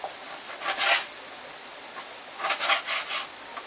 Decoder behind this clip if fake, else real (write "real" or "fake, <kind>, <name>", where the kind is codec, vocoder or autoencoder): real